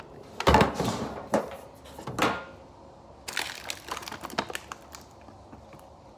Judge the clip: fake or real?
real